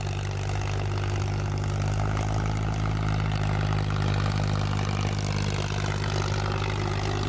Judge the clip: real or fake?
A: real